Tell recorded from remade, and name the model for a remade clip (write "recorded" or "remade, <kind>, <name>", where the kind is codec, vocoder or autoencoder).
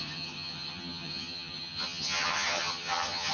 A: remade, vocoder, HiFi-GAN